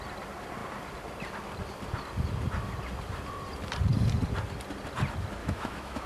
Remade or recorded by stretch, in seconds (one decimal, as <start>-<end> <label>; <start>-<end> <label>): 0.0-5.4 recorded; 5.4-6.1 remade